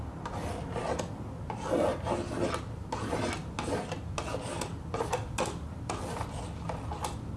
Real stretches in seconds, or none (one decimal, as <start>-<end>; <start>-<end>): 0.0-7.4